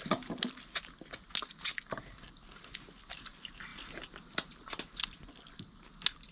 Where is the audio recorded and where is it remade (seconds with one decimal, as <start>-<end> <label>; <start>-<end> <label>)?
0.0-6.3 recorded